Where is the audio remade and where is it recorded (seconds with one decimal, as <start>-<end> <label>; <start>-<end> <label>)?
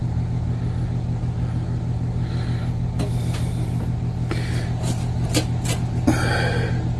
0.0-7.0 recorded